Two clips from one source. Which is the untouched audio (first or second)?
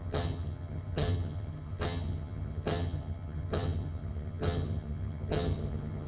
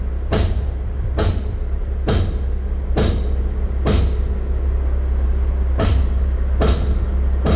second